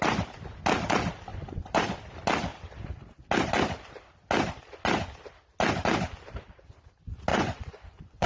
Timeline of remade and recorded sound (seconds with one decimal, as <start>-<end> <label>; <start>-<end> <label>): 0.0-1.3 recorded; 1.3-1.8 remade; 1.8-7.3 recorded; 7.3-8.3 remade